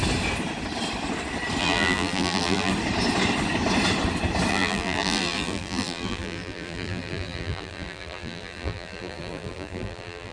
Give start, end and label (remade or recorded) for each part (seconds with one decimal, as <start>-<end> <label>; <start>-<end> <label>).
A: 0.0-1.6 recorded; 1.6-2.7 remade; 2.7-4.5 recorded; 4.5-10.3 remade